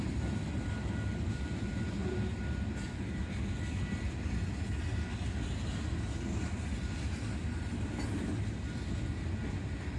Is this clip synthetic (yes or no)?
no